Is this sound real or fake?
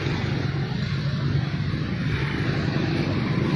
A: real